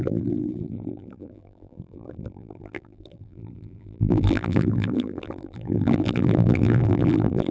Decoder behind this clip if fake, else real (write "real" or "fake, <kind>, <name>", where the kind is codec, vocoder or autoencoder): fake, vocoder, BigVGAN v2